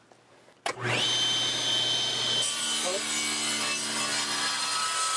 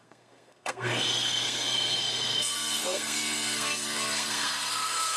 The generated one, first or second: second